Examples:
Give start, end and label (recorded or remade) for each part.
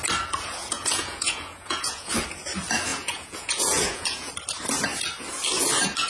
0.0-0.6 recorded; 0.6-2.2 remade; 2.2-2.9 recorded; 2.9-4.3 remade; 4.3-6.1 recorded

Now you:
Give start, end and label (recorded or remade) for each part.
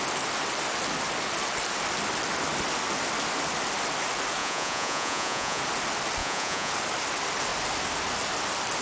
0.0-4.4 recorded; 4.4-5.6 remade; 5.6-6.2 recorded; 6.2-6.7 remade; 6.7-8.8 recorded